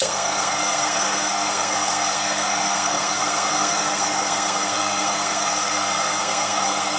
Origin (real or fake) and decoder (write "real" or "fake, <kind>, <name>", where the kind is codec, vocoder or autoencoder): fake, codec, SNAC